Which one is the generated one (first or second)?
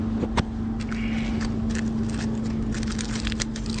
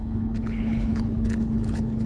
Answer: second